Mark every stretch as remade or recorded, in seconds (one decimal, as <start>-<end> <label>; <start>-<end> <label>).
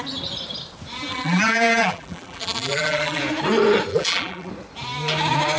0.0-1.1 recorded; 1.1-3.2 remade; 3.2-3.9 recorded; 3.9-4.5 remade; 4.5-5.6 recorded